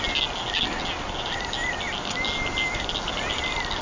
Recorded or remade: recorded